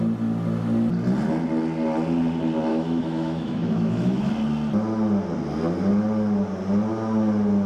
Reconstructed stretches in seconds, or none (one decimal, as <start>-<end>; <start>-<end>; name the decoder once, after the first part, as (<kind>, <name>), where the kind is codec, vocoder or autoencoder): 2.7-4.3 (autoencoder, DAC-VAE)